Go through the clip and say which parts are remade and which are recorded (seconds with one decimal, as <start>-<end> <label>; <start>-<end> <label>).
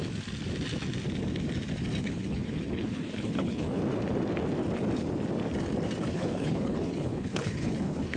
0.0-2.0 recorded; 2.0-3.8 remade; 3.8-6.1 recorded; 6.1-8.2 remade